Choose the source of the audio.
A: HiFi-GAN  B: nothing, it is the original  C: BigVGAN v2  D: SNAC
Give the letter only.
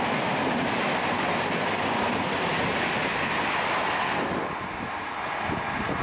B